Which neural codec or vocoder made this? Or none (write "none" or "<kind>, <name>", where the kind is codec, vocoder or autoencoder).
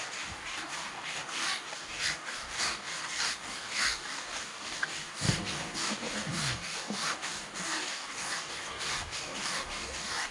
codec, DAC